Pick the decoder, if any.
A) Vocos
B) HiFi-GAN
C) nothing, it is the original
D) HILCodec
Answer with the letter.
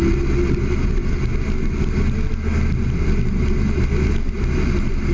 C